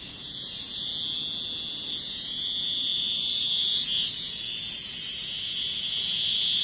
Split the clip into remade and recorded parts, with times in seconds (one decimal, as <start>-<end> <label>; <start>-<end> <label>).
0.0-0.9 remade; 0.9-2.0 recorded; 2.0-6.6 remade